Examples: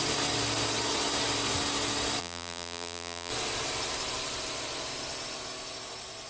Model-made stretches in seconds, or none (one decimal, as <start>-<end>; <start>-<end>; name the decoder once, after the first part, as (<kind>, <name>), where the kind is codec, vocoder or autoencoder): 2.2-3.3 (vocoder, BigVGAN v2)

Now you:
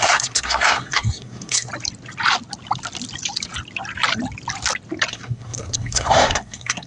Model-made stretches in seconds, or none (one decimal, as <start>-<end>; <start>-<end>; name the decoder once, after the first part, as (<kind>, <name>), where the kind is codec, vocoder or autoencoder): 0.0-1.7 (codec, SNAC); 5.1-6.9

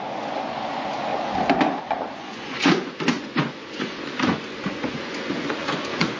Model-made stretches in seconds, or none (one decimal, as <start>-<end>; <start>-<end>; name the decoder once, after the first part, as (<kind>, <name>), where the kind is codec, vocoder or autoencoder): 0.0-1.1 (vocoder, Vocos); 1.8-6.2

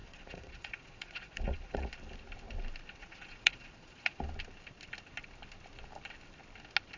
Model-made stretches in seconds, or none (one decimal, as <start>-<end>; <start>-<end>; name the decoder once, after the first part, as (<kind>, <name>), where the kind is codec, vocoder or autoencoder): 0.0-1.9 (vocoder, Vocos); 3.0-4.2